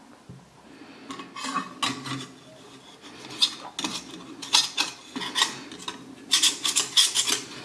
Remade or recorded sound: recorded